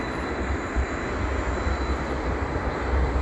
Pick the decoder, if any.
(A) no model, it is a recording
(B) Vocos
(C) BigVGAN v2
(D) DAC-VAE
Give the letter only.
A